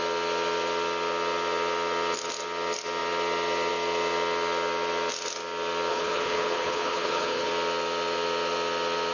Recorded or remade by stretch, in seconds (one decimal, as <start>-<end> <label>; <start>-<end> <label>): 0.0-5.9 recorded; 5.9-7.5 remade; 7.5-9.1 recorded